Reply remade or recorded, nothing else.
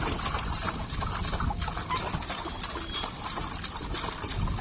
recorded